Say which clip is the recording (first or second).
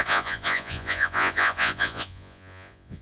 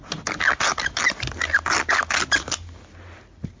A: second